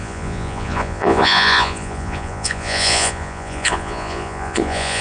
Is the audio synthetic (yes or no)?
yes